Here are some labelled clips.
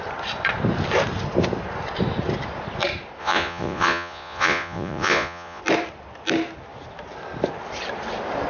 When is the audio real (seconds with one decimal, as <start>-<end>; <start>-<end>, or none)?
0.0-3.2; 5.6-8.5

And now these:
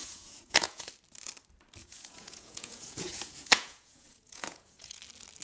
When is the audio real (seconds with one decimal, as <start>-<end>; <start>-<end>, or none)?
0.9-1.8; 5.0-5.4

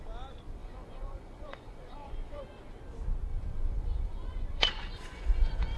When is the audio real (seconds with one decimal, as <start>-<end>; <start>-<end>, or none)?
0.0-0.6; 2.4-3.3

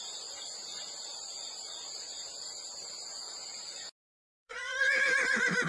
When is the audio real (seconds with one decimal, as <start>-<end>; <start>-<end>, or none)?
0.0-4.3